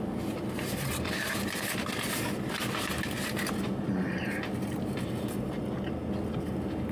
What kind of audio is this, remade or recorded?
recorded